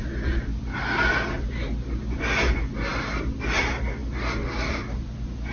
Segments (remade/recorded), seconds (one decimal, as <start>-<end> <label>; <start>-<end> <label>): 0.0-5.5 recorded